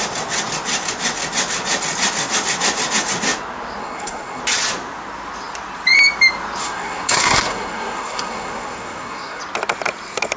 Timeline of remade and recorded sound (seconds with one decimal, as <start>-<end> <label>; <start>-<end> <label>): 0.0-3.8 recorded; 3.8-4.4 remade; 4.4-6.6 recorded; 6.6-9.4 remade; 9.4-10.4 recorded